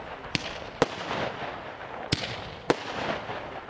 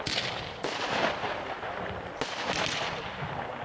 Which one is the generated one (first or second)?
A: second